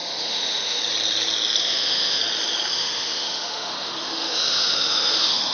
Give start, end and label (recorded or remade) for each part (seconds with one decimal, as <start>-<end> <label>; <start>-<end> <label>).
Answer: 0.0-0.8 remade; 0.8-1.6 recorded; 1.6-2.2 remade; 2.2-2.7 recorded; 2.7-5.5 remade